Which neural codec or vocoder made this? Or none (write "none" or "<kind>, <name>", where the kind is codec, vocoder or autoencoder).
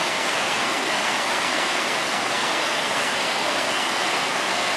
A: codec, SNAC